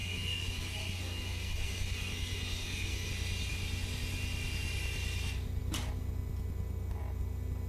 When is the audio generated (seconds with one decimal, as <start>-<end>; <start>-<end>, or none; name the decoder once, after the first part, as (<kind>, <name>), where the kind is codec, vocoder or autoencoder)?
0.0-3.1 (codec, SNAC)